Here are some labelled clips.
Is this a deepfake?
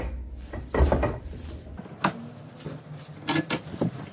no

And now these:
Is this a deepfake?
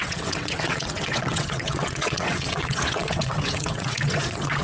yes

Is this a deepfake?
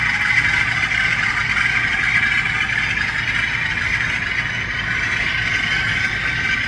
no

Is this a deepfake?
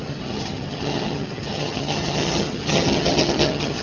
yes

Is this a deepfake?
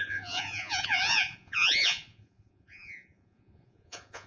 yes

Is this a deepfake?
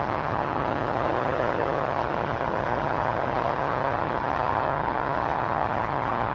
yes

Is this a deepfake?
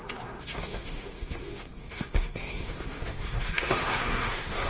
yes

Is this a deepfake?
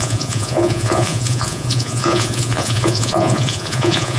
yes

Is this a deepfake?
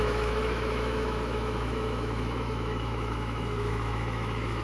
yes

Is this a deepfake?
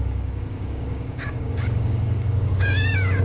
yes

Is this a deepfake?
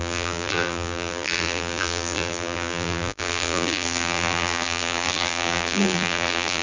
yes